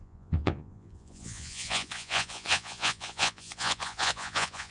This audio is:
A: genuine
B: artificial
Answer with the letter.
B